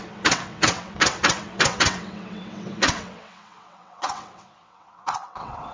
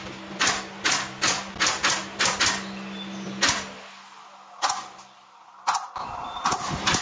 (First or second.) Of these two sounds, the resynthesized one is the first